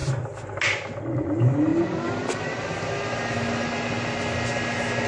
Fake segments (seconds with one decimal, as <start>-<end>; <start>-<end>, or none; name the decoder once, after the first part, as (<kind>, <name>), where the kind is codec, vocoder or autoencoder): none